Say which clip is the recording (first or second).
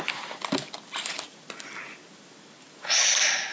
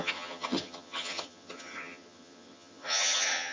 first